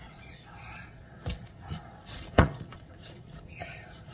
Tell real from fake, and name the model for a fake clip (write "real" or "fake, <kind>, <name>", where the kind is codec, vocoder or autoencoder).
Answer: fake, vocoder, Vocos